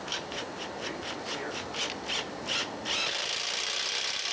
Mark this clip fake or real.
real